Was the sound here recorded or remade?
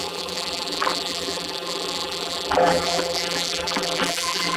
remade